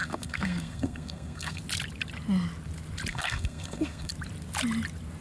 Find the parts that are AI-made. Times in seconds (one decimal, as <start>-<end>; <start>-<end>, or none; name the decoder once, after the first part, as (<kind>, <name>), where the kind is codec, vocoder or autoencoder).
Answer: 0.0-1.6 (codec, SNAC); 3.1-4.1